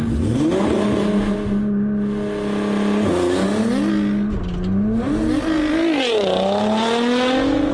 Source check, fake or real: real